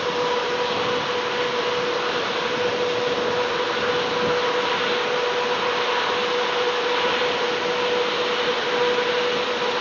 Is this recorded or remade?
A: recorded